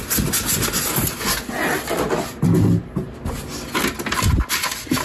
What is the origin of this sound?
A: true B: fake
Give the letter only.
A